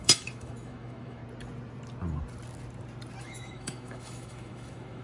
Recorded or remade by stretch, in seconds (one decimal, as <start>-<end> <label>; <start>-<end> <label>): 0.0-1.2 remade; 1.2-3.2 recorded; 3.2-5.0 remade